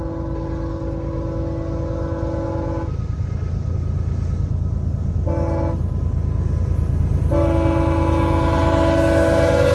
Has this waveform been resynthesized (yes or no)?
no